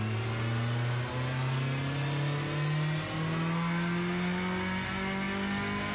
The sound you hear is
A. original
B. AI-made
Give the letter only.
A